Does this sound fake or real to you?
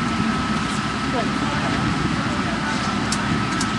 fake